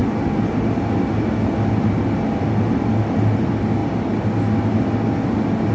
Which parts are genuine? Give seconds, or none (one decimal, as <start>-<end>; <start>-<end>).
0.0-5.7